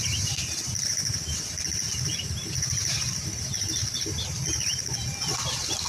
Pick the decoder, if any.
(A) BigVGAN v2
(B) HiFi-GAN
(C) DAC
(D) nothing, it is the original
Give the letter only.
A